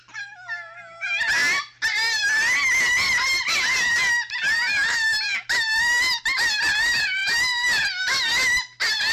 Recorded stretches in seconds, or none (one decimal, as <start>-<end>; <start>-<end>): 0.0-9.1